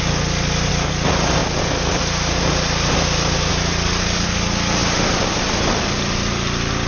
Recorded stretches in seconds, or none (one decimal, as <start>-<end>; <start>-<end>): 0.0-6.9